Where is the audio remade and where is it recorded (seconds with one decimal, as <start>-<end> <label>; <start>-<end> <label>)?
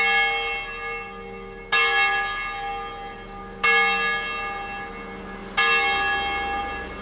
0.0-7.0 recorded